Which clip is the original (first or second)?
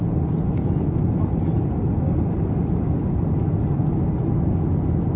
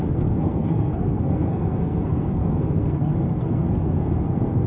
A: first